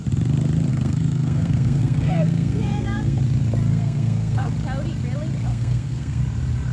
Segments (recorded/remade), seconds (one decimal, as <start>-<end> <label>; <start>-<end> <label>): 0.0-0.7 recorded; 0.7-3.2 remade; 3.2-3.7 recorded; 3.7-4.5 remade; 4.5-5.5 recorded; 5.5-6.2 remade; 6.2-6.7 recorded